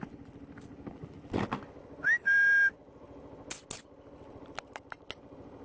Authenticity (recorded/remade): recorded